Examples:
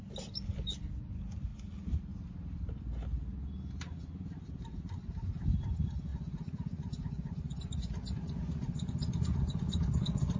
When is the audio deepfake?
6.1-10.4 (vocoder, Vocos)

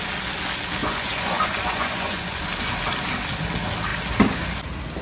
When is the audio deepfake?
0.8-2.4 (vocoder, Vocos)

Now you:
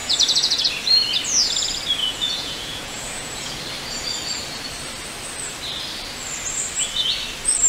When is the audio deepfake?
0.0-0.6 (vocoder, Vocos); 2.0-3.6

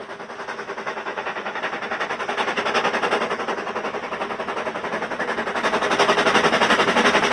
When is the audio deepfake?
1.1-1.6 (vocoder, Vocos)